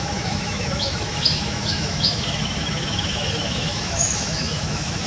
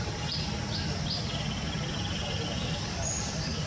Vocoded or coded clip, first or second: first